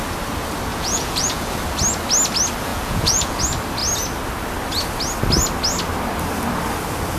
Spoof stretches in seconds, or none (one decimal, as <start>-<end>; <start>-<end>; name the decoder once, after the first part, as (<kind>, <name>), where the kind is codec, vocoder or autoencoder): 0.7-1.5 (vocoder, Vocos); 2.7-3.4